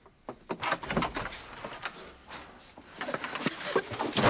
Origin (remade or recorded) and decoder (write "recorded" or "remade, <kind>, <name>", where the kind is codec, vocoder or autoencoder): recorded